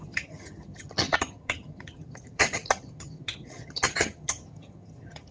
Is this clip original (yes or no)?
no